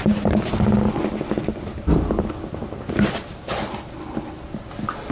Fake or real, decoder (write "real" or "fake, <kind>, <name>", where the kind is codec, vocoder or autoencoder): real